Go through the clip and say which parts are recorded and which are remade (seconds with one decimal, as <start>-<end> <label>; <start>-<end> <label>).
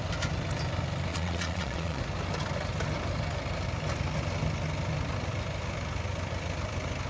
0.0-1.1 recorded; 1.1-2.0 remade; 2.0-7.1 recorded